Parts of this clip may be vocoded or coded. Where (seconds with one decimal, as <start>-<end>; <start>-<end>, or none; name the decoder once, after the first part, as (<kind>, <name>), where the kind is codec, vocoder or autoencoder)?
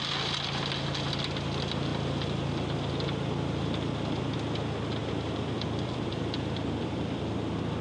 5.0-7.3 (vocoder, BigVGAN v2)